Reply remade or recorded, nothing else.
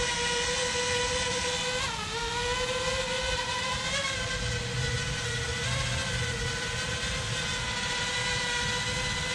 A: recorded